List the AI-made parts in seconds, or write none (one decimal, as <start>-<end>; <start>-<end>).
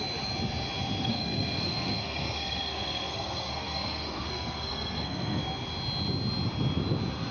1.0-5.4